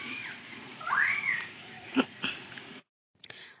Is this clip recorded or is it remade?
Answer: remade